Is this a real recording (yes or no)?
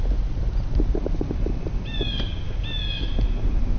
yes